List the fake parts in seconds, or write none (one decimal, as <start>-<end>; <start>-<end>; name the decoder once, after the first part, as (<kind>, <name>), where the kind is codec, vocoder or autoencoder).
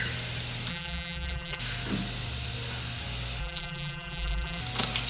0.7-1.6 (vocoder, BigVGAN v2); 3.4-4.6